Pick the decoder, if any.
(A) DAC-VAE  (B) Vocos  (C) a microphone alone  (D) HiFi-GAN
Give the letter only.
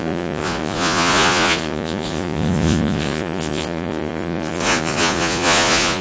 B